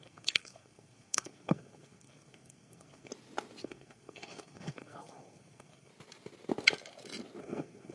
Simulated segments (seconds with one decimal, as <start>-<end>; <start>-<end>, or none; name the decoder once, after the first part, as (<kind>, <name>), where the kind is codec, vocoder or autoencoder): 0.0-3.1 (codec, SNAC); 3.6-5.9; 7.4-7.9